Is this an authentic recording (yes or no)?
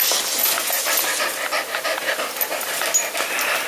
yes